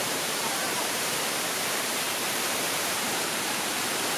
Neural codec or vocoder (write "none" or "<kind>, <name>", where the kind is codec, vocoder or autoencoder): vocoder, BigVGAN v2